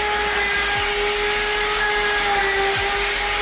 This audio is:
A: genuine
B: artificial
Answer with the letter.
A